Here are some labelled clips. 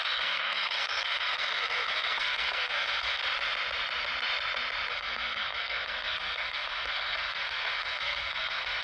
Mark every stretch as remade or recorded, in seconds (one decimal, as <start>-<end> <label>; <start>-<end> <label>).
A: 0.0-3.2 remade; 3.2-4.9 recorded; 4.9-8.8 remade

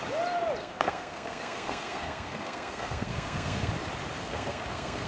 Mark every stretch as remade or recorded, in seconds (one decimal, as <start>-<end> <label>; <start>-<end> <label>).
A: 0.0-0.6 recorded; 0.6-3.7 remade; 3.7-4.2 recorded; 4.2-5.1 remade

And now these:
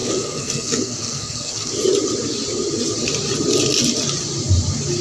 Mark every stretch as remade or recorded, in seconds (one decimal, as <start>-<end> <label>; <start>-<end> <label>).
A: 0.0-1.7 remade; 1.7-5.0 recorded

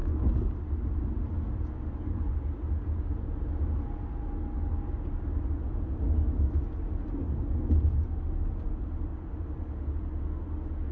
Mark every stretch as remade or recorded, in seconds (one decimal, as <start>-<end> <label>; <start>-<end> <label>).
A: 0.0-10.9 recorded

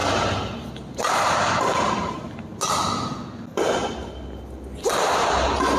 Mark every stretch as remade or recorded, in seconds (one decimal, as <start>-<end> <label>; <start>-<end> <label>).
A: 0.0-5.8 recorded

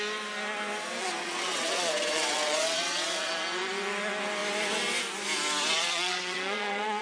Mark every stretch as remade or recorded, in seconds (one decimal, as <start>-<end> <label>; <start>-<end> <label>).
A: 0.0-1.2 recorded; 1.2-3.3 remade; 3.3-5.8 recorded; 5.8-7.0 remade